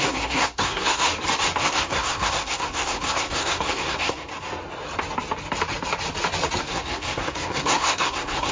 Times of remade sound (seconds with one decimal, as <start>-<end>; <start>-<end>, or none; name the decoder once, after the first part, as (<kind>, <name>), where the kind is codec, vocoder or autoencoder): 0.0-1.1 (codec, SNAC); 1.6-4.3; 6.6-8.5